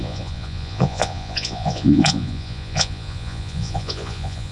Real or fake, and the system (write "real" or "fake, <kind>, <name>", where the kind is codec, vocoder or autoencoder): fake, vocoder, Vocos